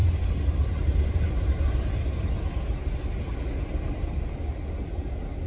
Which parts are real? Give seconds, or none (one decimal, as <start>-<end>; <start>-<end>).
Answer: 1.3-5.5

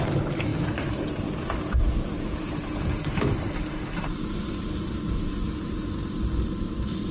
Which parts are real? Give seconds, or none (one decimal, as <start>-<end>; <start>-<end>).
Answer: none

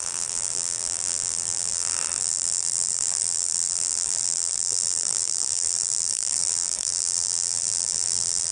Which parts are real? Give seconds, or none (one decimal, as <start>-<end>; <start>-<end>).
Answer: none

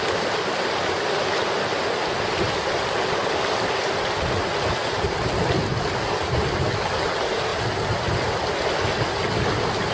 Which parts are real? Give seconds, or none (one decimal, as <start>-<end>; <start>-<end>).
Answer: 0.0-4.8; 5.3-9.9

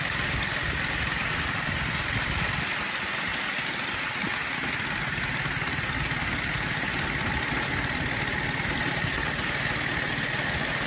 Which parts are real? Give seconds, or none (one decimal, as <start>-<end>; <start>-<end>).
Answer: 0.0-10.9

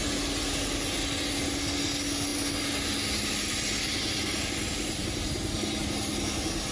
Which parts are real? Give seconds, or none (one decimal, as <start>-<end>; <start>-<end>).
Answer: 0.0-4.3; 5.8-6.7

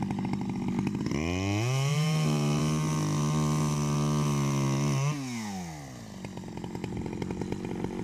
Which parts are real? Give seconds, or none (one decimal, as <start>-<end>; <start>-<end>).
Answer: 0.0-1.9; 2.6-8.0

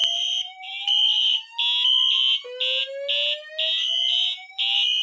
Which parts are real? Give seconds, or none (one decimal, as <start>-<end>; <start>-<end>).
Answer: 0.8-5.0